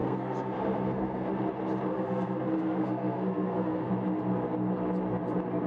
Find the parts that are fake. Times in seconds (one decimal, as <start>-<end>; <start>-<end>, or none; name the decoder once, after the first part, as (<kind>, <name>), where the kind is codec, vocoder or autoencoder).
0.0-1.3 (codec, SNAC); 1.9-3.9